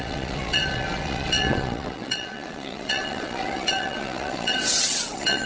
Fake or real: fake